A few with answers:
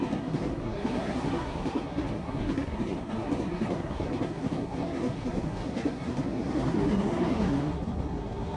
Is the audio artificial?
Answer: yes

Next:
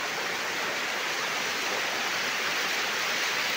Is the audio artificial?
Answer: no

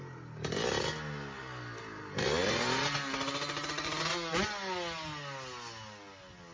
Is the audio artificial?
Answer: no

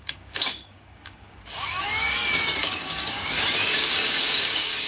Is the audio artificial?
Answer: yes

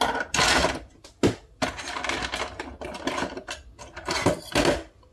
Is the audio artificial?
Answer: no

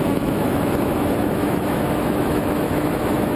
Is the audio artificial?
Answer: yes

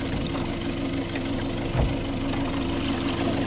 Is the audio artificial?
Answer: no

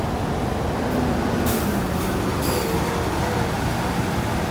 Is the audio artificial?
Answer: no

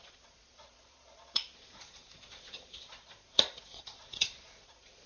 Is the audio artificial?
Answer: yes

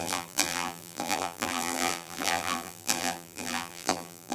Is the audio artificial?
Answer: yes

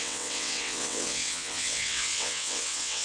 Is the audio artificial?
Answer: yes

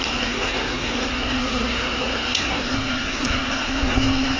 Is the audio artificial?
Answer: yes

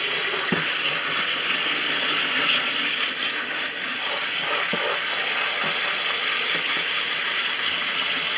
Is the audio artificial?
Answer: no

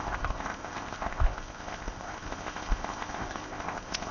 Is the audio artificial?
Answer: yes